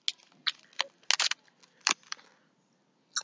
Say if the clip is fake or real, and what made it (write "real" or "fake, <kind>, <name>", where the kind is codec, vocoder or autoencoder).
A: real